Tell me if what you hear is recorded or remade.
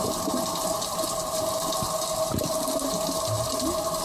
recorded